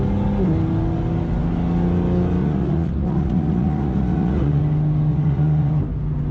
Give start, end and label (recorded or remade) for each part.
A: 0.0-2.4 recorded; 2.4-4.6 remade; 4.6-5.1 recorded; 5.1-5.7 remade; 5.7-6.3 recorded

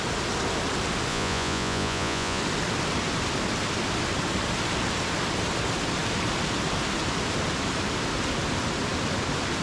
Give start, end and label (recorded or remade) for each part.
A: 0.0-1.1 recorded; 1.1-2.4 remade; 2.4-9.6 recorded

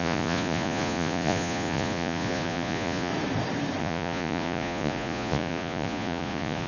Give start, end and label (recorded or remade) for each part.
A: 0.0-3.1 remade; 3.1-3.8 recorded; 3.8-6.7 remade

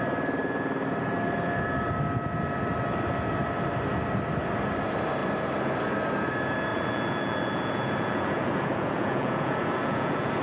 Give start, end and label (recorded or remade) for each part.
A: 0.0-6.7 recorded; 6.7-10.4 remade

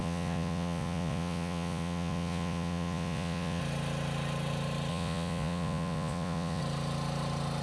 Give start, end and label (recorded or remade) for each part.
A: 0.0-3.6 remade; 3.6-4.9 recorded; 4.9-6.6 remade; 6.6-7.6 recorded

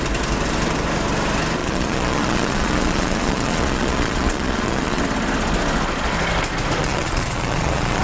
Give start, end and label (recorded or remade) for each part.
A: 0.0-1.6 recorded; 1.6-5.0 remade; 5.0-6.8 recorded; 6.8-8.0 remade

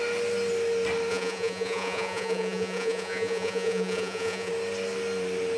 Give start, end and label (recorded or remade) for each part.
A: 0.0-1.1 recorded; 1.1-4.5 remade; 4.5-5.6 recorded

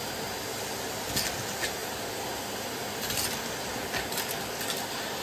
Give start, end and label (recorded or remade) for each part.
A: 0.0-5.2 recorded